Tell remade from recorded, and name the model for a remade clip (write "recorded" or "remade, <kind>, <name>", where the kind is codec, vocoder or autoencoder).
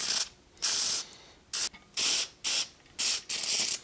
recorded